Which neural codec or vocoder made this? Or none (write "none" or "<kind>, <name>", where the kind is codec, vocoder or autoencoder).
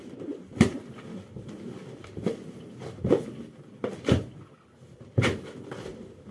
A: none